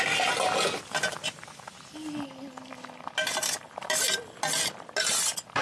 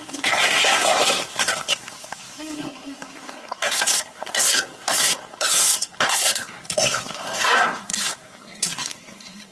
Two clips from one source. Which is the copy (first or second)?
second